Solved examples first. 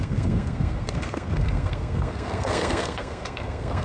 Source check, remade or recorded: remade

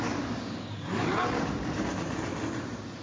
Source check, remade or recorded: recorded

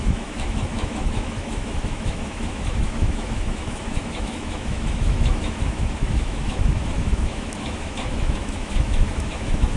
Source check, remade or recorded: remade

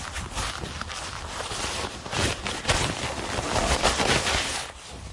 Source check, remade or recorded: recorded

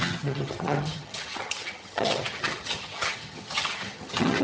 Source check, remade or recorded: remade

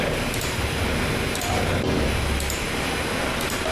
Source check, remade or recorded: recorded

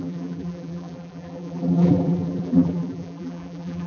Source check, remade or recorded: remade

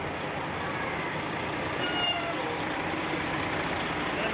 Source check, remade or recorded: recorded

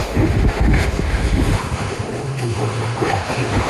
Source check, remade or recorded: remade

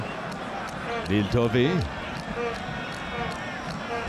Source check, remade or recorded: recorded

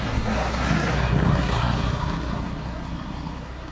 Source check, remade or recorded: remade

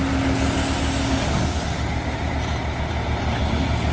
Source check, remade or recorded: recorded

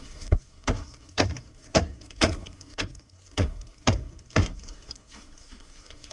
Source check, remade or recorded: remade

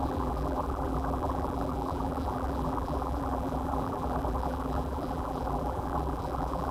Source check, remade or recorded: remade